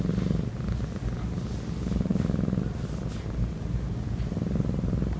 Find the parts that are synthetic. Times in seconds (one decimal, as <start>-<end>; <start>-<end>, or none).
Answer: none